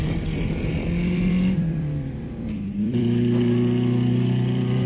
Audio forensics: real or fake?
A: fake